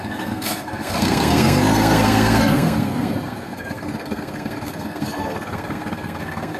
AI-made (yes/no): yes